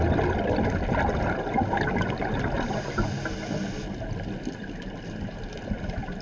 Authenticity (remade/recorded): recorded